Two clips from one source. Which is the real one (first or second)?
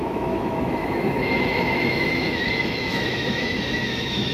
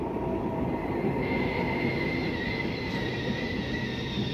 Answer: second